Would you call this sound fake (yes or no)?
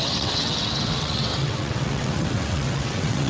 yes